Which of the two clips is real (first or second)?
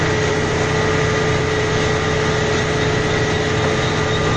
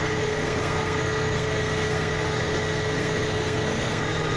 first